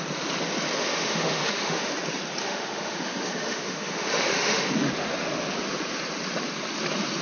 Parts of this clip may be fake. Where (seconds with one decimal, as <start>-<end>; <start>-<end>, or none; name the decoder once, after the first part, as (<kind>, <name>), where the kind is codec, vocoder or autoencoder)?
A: 0.8-1.9 (autoencoder, DAC-VAE); 2.4-4.7